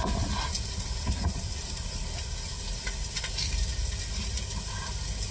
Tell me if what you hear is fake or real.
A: real